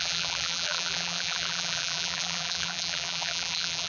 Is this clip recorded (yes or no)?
no